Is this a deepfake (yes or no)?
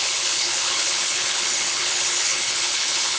yes